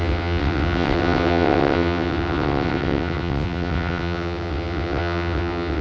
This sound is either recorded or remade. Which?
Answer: remade